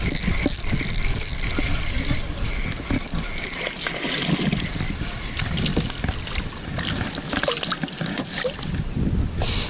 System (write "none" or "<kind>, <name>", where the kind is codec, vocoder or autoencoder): none